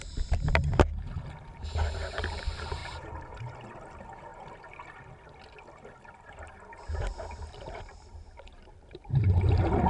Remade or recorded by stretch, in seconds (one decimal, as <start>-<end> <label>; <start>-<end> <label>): 0.0-2.8 recorded; 2.8-3.7 remade; 3.7-7.4 recorded; 7.4-9.5 remade; 9.5-9.9 recorded